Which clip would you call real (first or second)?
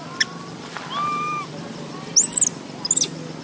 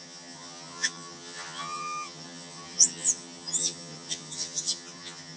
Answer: first